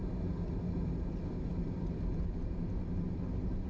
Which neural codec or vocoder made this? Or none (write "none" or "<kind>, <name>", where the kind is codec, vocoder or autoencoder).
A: none